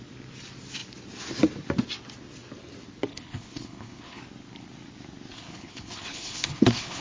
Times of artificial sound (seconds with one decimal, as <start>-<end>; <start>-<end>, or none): 3.1-4.2; 5.3-7.0